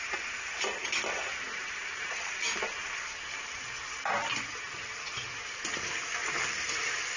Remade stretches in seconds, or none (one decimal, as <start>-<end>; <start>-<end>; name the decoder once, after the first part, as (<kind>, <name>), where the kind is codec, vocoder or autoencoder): none